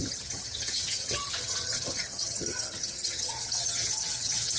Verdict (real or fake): fake